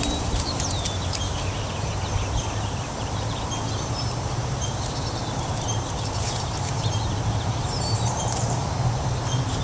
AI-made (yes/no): yes